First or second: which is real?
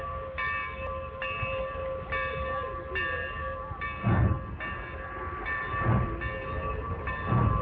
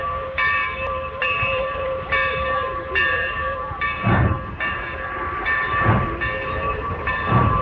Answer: first